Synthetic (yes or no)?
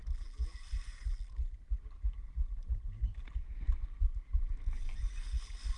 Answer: no